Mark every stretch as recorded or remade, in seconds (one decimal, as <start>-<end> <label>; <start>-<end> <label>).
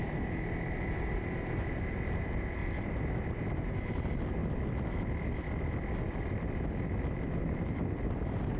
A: 0.0-2.6 remade; 2.6-3.4 recorded; 3.4-4.4 remade; 4.4-7.4 recorded; 7.4-8.6 remade